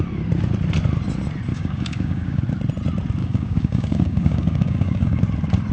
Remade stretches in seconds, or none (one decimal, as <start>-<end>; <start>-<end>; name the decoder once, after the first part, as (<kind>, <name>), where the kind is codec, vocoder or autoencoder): 1.5-2.4 (codec, DAC); 3.2-5.2